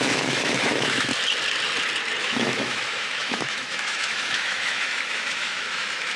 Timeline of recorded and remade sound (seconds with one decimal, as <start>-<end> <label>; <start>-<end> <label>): 0.0-1.1 remade; 1.1-2.2 recorded; 2.2-6.2 remade